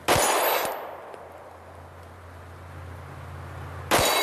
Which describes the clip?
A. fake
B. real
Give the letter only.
B